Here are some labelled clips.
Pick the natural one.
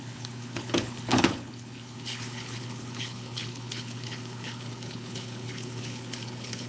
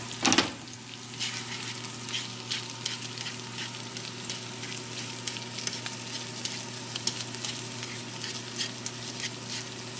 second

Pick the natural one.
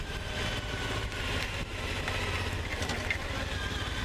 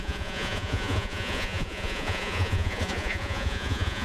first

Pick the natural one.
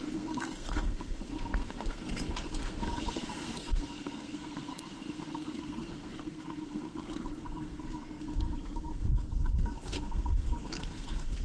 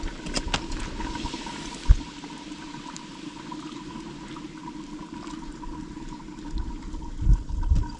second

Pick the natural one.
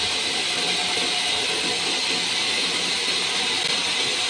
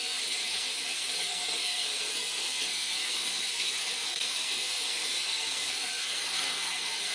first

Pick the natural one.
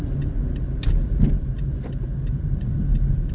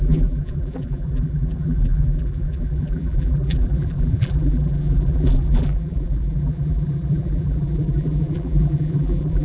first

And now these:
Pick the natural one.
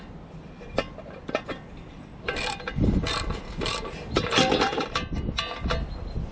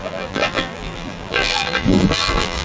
first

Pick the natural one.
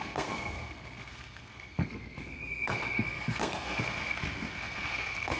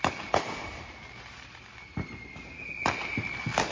second